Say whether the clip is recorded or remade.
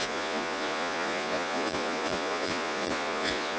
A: remade